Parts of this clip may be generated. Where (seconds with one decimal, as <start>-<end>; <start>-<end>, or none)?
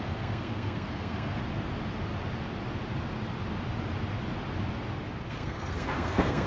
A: 0.0-1.4; 5.3-6.5